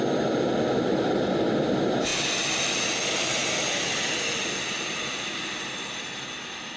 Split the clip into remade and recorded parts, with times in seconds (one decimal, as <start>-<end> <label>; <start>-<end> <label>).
0.0-2.1 recorded; 2.1-2.6 remade; 2.6-3.4 recorded; 3.4-5.4 remade; 5.4-6.8 recorded